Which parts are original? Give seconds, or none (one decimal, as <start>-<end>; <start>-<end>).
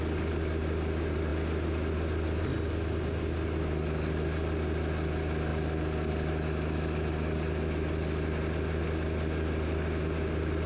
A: 0.0-10.7